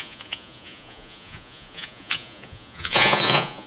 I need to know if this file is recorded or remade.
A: remade